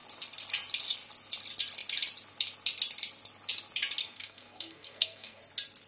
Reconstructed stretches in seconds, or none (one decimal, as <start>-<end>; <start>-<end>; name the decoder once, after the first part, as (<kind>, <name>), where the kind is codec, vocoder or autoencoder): 4.0-5.4 (codec, SNAC)